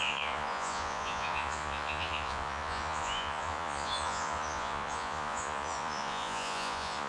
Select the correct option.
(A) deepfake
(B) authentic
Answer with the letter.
A